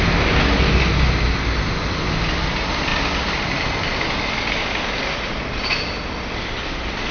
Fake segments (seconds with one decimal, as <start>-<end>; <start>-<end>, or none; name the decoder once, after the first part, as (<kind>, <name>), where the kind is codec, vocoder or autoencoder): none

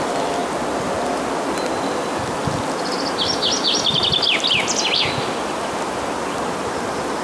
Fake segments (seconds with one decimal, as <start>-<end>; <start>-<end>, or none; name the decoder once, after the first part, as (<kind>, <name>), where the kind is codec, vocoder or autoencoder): none

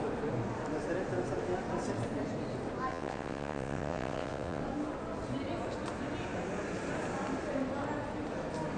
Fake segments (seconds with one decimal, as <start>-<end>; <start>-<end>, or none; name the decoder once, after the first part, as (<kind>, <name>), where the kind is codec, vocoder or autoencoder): 2.9-4.6 (vocoder, WaveNeXt)